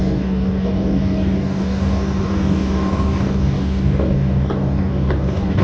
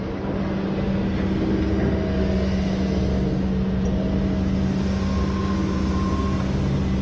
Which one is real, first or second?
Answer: second